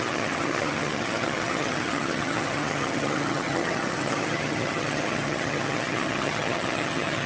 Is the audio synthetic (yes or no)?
yes